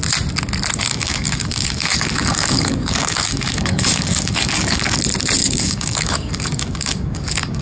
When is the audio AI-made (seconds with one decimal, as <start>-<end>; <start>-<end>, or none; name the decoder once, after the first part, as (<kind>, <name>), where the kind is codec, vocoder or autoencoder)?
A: 0.9-5.0 (codec, DAC); 5.4-7.6